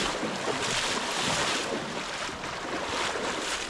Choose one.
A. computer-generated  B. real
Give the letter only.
B